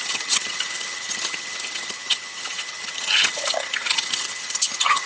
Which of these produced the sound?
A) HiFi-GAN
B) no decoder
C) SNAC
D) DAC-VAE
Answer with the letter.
A